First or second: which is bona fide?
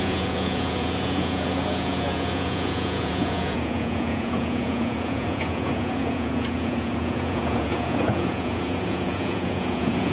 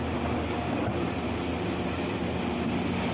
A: second